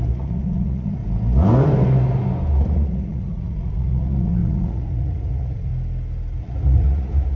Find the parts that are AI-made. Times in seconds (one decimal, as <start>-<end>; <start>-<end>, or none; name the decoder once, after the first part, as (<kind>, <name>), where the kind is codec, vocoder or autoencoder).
0.0-1.0 (vocoder, Vocos); 2.7-5.7; 6.4-7.4